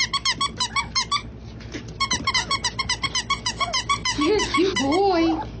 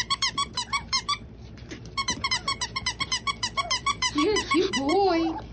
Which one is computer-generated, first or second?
second